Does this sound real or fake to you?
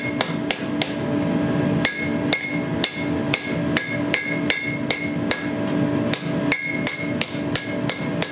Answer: real